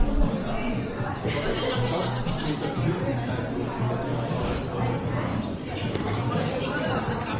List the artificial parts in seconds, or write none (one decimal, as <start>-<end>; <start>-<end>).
5.3-7.0